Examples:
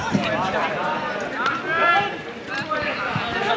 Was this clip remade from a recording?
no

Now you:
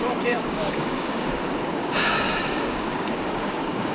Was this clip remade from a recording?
yes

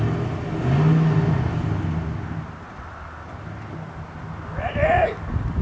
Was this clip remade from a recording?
no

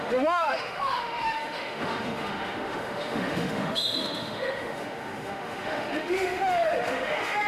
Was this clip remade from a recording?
yes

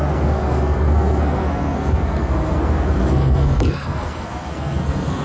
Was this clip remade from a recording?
yes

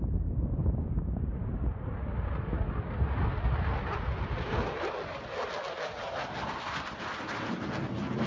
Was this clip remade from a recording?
no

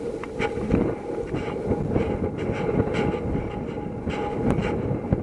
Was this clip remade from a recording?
no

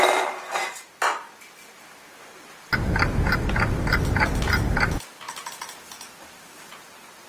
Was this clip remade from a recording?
no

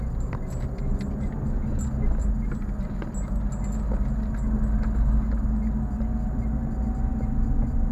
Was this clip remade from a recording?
no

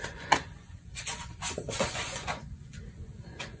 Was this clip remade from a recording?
yes